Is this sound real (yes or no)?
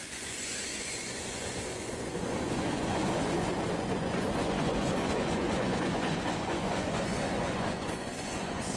no